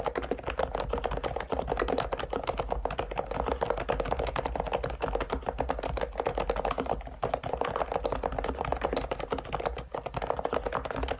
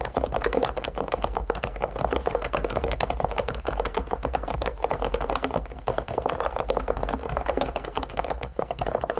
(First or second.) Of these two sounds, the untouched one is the first